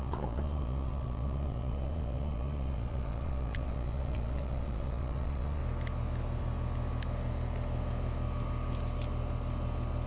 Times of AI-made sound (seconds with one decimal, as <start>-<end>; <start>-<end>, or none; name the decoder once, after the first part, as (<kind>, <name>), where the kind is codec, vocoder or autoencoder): 0.0-5.6 (vocoder, Vocos)